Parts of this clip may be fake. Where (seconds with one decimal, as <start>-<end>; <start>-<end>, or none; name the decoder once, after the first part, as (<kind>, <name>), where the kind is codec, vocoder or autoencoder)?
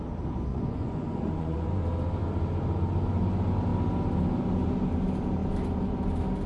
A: 0.5-1.8 (vocoder, Vocos)